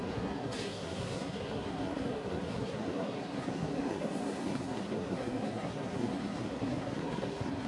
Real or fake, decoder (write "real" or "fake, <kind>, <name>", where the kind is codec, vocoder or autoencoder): fake, codec, SNAC